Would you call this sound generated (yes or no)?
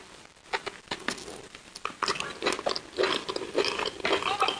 no